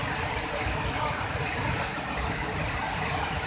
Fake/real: fake